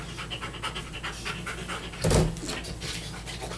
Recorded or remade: recorded